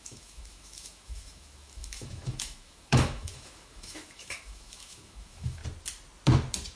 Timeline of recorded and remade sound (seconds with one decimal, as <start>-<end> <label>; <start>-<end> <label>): 0.0-5.6 remade; 5.6-6.8 recorded